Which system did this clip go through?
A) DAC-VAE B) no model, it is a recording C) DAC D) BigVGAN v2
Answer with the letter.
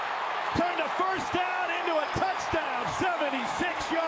A